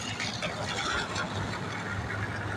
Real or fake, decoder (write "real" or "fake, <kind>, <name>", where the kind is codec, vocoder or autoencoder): real